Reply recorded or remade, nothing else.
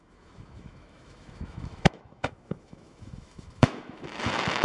remade